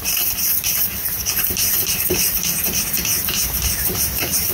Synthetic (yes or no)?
yes